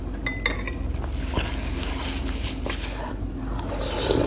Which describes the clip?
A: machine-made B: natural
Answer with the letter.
B